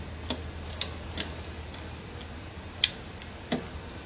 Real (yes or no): yes